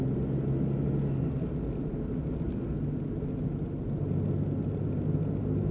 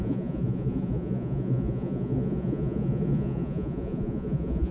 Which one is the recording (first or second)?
first